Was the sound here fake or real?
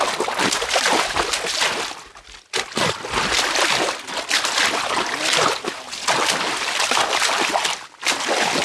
real